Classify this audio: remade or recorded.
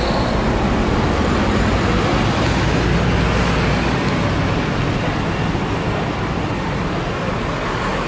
recorded